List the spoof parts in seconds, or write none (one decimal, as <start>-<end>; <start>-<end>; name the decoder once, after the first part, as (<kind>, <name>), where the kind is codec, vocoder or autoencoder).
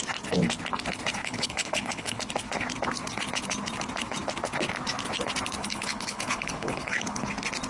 1.2-2.2 (codec, HILCodec); 5.6-7.3